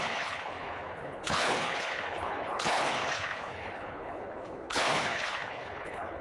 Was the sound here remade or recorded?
remade